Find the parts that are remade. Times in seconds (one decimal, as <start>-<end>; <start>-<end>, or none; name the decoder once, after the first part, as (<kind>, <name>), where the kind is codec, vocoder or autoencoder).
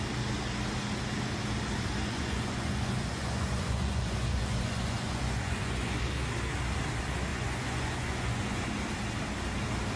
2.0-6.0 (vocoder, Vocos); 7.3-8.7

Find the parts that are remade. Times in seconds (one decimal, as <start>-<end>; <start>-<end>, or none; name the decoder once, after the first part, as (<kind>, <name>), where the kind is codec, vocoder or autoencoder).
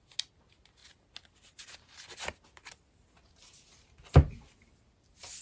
none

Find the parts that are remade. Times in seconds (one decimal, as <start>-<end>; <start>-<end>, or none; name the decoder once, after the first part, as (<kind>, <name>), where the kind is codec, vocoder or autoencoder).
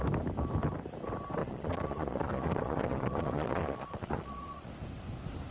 1.4-4.7 (vocoder, Vocos)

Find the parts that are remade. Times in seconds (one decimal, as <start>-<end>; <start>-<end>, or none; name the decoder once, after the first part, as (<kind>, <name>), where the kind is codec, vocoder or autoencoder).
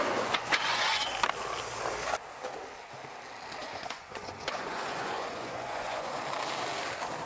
0.0-1.1 (vocoder, Vocos); 3.6-6.2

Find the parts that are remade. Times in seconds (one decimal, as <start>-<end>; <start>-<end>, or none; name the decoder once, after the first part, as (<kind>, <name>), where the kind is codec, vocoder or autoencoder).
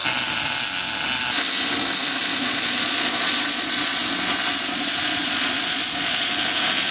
2.2-6.3 (vocoder, Vocos)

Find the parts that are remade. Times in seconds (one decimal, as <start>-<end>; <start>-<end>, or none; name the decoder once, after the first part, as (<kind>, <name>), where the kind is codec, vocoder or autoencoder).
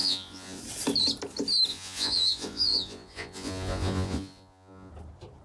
0.0-0.6 (vocoder, Vocos); 1.7-4.9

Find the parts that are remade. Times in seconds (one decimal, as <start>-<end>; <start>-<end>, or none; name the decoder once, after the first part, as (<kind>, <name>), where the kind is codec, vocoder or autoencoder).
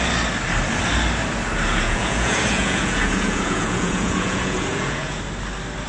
1.7-5.2 (vocoder, Vocos)